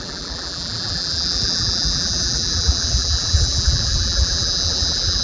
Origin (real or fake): fake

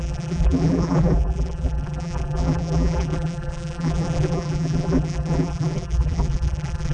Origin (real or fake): fake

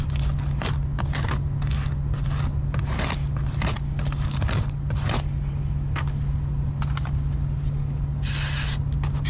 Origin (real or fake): real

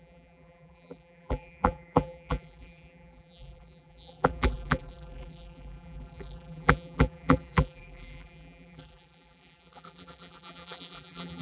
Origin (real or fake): fake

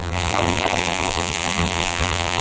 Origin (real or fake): fake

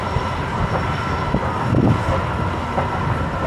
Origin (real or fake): fake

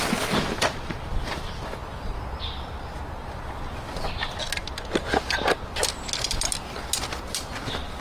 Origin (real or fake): real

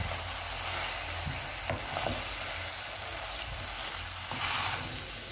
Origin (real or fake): real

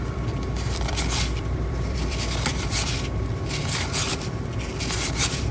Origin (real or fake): fake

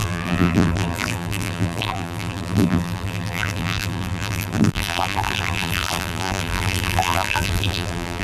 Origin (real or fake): fake